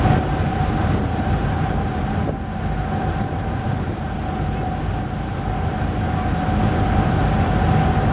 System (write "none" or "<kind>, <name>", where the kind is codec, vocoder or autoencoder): none